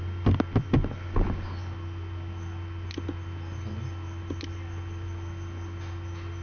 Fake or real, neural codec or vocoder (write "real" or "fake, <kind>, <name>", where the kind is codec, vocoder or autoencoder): real